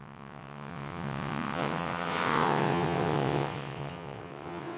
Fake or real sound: fake